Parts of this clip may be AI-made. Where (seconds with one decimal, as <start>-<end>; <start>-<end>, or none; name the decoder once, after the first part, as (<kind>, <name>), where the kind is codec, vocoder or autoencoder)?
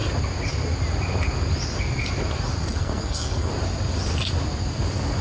2.7-3.5 (codec, SNAC)